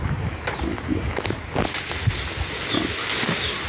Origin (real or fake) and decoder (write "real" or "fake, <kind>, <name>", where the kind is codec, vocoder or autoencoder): real